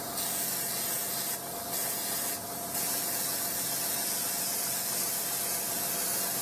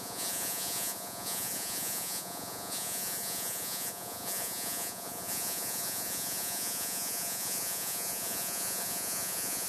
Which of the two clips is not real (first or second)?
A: second